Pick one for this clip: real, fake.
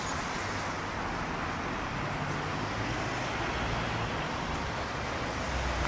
real